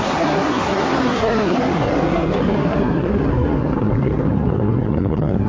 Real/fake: fake